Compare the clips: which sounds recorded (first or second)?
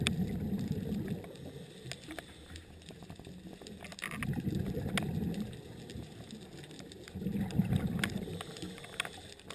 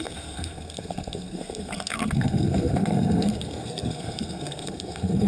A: first